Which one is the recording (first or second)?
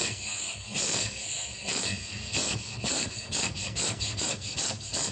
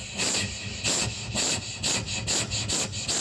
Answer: second